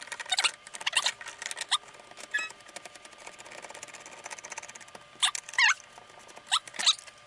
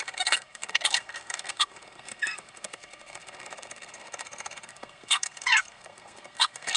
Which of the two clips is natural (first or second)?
first